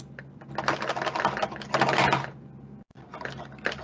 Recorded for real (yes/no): yes